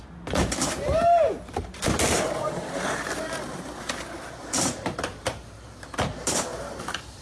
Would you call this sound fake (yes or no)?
yes